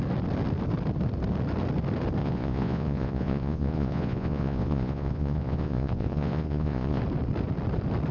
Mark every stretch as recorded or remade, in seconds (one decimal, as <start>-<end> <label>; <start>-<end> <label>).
0.0-2.2 recorded; 2.2-7.0 remade; 7.0-8.1 recorded